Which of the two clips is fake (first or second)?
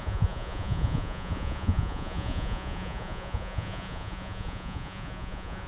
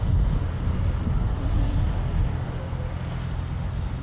first